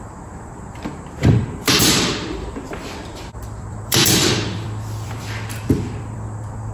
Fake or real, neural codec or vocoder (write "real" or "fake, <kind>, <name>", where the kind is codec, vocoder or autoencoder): fake, vocoder, BigVGAN v2